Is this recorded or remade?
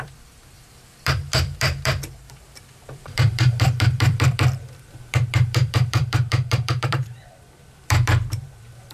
remade